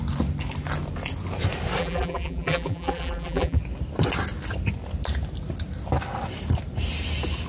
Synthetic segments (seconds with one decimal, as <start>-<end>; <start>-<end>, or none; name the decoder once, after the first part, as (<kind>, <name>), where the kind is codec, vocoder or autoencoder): 1.8-3.6 (vocoder, BigVGAN v2)